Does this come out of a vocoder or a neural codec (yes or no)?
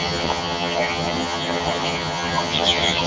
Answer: yes